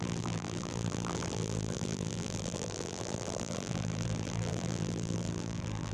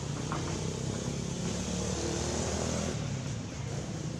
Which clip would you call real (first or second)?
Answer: second